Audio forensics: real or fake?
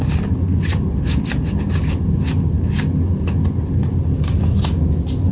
real